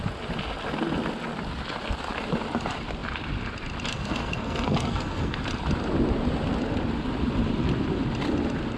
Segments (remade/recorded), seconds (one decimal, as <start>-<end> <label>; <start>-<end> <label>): 0.0-3.9 recorded; 3.9-5.4 remade; 5.4-8.8 recorded